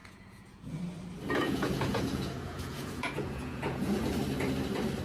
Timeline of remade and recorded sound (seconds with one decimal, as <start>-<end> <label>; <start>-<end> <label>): 0.0-0.8 remade; 0.8-1.4 recorded; 1.4-4.1 remade; 4.1-5.0 recorded